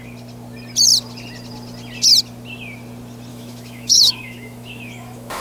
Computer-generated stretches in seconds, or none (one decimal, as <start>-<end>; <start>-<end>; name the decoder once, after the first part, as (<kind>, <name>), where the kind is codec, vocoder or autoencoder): 3.3-5.4 (autoencoder, DAC-VAE)

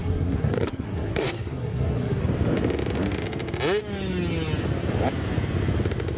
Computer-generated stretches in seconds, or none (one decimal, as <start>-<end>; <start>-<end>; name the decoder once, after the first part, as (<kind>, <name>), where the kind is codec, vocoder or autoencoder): 0.0-2.2 (codec, SNAC)

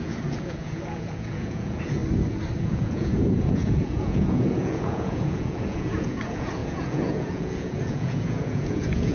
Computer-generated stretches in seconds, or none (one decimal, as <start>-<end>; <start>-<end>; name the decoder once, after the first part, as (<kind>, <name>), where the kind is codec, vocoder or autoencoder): 0.0-2.0 (vocoder, Vocos); 2.6-9.1

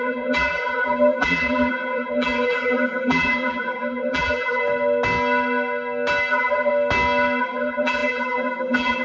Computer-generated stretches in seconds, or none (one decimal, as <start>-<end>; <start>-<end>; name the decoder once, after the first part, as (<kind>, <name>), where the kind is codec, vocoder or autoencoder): 0.0-4.6 (vocoder, BigVGAN v2); 6.3-6.7; 7.4-9.0

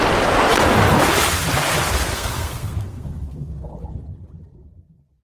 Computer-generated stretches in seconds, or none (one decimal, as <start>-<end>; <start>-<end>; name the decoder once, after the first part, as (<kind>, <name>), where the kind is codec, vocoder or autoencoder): 2.1-3.7 (codec, SNAC)